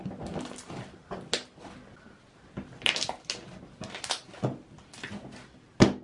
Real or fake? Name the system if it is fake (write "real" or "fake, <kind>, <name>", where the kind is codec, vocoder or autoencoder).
real